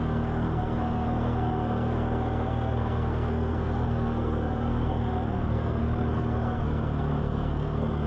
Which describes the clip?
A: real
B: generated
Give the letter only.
B